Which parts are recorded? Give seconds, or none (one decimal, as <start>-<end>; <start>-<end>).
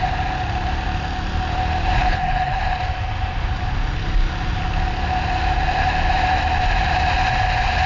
0.0-2.0; 2.6-7.9